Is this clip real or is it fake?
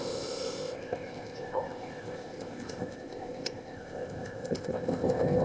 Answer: fake